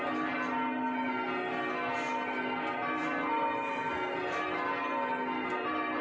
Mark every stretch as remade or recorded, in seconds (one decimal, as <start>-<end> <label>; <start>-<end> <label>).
0.0-6.0 recorded